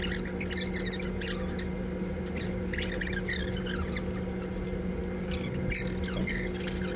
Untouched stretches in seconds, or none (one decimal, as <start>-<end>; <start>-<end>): 0.0-7.0